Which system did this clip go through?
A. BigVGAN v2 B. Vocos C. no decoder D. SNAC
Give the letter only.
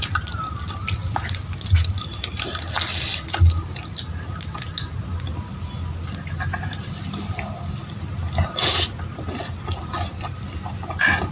C